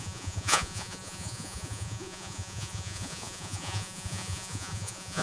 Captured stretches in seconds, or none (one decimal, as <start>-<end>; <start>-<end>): none